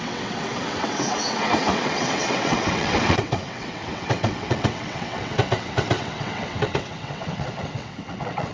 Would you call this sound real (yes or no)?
no